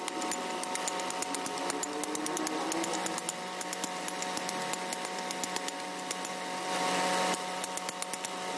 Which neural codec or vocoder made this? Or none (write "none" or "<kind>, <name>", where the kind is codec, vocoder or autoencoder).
none